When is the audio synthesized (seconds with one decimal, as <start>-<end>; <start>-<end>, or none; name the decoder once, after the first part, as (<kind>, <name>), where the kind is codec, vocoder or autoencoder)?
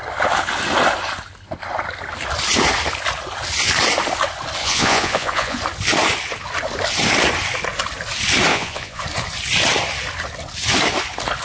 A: 4.6-5.6 (vocoder, Vocos); 8.5-9.0